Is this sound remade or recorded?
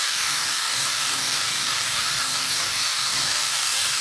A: remade